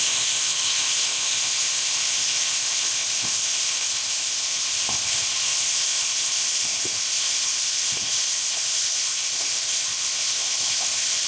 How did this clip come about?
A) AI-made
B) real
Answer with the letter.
A